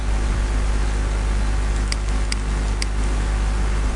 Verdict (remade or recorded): recorded